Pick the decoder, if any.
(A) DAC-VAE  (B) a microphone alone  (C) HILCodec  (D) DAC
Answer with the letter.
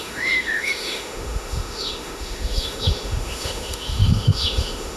A